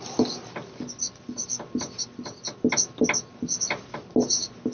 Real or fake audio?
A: real